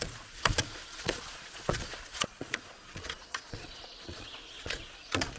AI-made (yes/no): yes